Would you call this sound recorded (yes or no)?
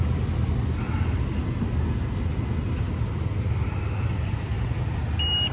yes